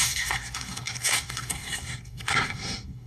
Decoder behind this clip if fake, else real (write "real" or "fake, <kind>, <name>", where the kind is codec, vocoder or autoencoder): fake, codec, SNAC